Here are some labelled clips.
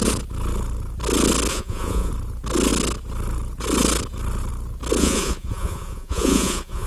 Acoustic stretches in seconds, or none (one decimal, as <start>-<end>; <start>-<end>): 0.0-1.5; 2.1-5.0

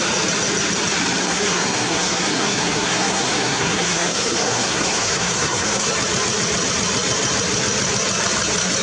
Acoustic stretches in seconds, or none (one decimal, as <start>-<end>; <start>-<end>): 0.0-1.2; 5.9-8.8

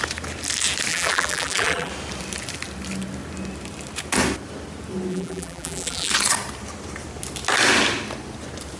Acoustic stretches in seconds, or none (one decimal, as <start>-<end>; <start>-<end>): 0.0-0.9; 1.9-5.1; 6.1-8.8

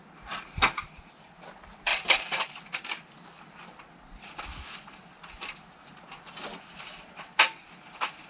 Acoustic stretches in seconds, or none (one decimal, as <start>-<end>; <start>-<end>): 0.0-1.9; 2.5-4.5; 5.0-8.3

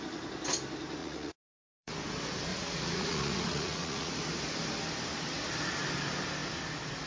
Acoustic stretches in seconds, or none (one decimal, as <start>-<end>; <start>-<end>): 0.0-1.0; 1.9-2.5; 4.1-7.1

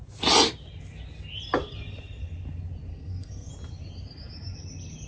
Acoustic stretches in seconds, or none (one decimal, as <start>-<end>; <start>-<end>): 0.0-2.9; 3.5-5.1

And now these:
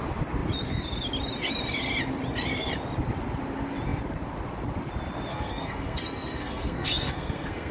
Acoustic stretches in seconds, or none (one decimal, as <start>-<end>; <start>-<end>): 0.0-5.3

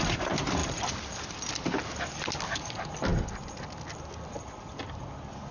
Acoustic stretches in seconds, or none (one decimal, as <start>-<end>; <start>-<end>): 0.0-5.5